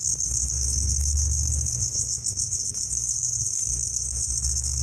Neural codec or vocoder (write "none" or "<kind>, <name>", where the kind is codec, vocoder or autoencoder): codec, SNAC